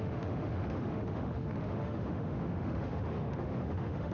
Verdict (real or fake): fake